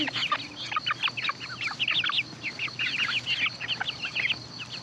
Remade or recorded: recorded